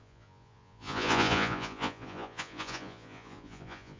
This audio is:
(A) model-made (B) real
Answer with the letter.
A